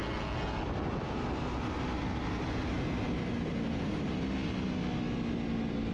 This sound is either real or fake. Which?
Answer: real